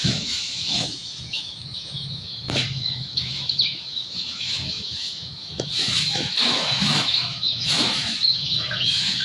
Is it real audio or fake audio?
fake